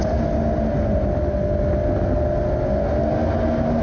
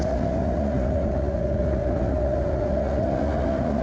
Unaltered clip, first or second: first